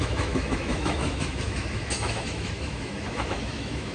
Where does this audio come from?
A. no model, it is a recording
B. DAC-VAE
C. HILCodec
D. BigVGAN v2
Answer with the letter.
B